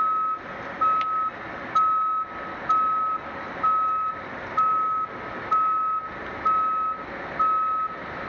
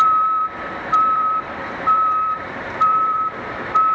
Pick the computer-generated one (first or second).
second